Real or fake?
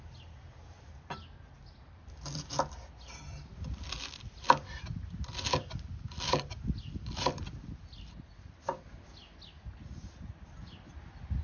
real